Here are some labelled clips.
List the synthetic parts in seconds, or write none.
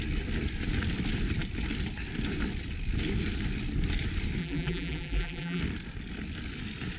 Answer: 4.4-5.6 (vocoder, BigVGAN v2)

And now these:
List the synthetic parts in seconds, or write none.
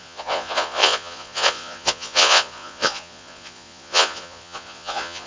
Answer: 0.0-5.3 (vocoder, Vocos)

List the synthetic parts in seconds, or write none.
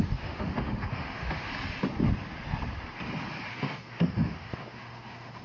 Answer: 0.0-1.5 (autoencoder, DAC-VAE); 3.5-5.4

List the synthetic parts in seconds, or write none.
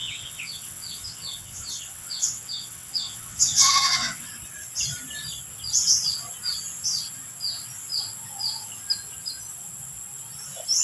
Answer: 0.0-4.3 (vocoder, WaveNeXt)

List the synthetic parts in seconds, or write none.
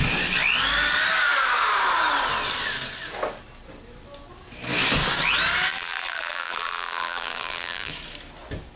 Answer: 5.7-7.9 (vocoder, BigVGAN v2)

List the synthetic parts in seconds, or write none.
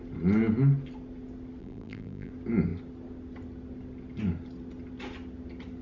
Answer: 1.6-2.3 (vocoder, BigVGAN v2)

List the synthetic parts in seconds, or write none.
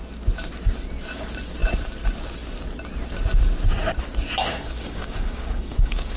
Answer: 4.5-6.2 (codec, DAC)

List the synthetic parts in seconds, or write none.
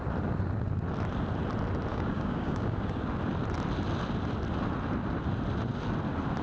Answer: 1.9-3.1 (codec, DAC)